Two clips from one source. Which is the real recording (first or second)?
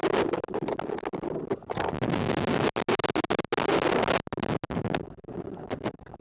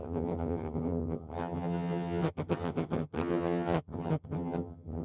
first